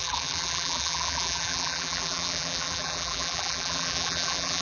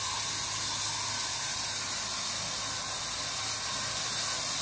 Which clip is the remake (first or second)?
first